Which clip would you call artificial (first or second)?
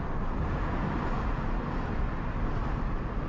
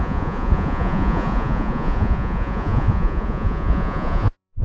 second